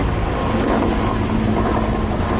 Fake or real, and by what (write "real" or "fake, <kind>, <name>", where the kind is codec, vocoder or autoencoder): real